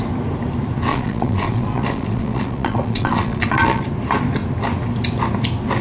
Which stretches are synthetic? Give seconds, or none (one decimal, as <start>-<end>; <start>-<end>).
0.9-3.8